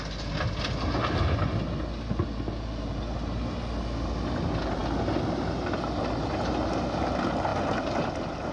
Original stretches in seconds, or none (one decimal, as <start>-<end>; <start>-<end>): 0.0-8.5